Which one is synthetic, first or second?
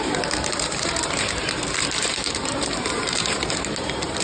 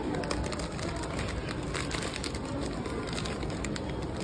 first